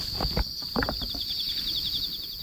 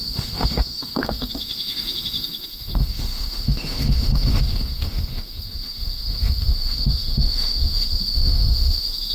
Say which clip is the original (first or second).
first